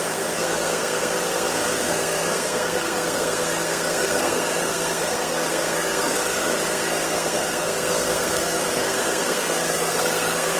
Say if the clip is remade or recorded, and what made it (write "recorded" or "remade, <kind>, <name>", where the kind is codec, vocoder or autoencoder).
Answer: remade, codec, SNAC